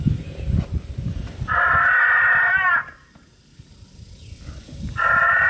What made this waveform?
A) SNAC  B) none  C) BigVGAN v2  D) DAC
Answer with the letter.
B